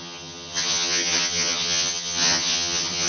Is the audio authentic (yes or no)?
no